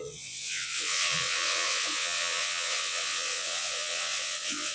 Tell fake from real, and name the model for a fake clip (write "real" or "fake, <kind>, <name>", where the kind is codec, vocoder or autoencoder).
fake, vocoder, WaveNeXt